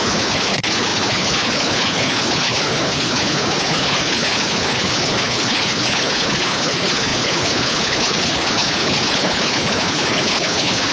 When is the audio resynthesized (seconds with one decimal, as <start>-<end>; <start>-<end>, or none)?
0.0-10.9